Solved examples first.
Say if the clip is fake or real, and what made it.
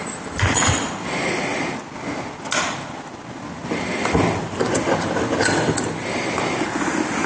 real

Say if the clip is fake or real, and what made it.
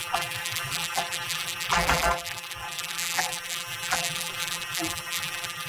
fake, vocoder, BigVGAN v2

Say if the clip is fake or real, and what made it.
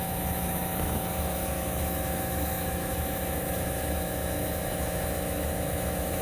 fake, autoencoder, DAC-VAE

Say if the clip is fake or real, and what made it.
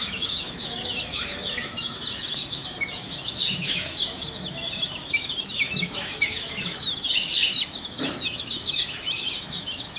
fake, autoencoder, DAC-VAE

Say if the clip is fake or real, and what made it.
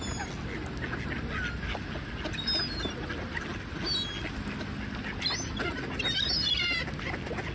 real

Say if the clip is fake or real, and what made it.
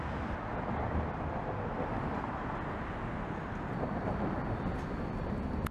real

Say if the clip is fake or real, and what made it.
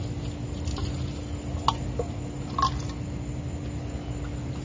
real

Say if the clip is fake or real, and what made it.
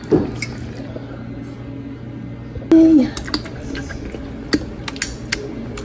real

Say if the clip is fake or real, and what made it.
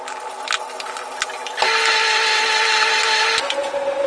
real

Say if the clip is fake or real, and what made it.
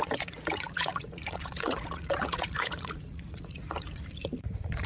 fake, vocoder, Vocos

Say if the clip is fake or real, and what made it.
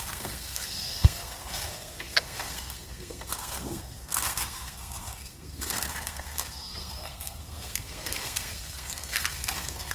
fake, codec, SNAC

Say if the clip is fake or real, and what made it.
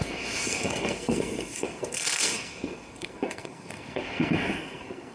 fake, codec, SNAC